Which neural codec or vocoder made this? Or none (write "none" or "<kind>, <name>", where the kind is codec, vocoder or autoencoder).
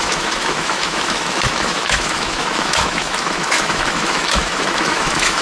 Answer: autoencoder, DAC-VAE